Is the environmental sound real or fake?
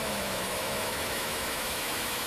fake